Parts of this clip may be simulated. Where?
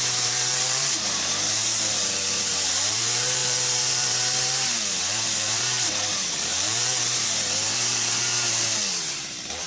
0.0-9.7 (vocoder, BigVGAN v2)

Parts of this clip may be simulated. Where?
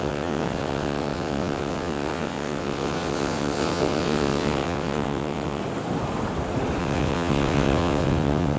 0.0-5.6 (vocoder, WaveNeXt); 6.8-8.6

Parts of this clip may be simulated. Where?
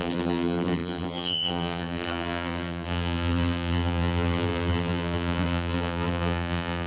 0.0-6.9 (vocoder, BigVGAN v2)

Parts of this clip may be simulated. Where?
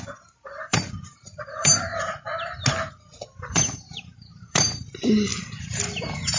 0.0-1.9 (vocoder, BigVGAN v2); 2.9-5.3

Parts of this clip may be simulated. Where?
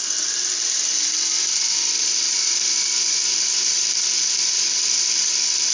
0.0-5.7 (vocoder, BigVGAN v2)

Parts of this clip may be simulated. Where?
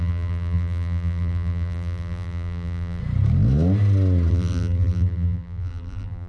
0.0-3.0 (vocoder, BigVGAN v2); 4.3-6.3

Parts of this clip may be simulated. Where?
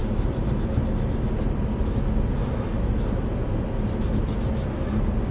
none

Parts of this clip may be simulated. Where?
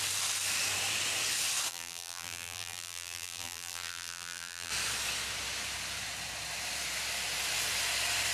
1.7-4.7 (vocoder, BigVGAN v2)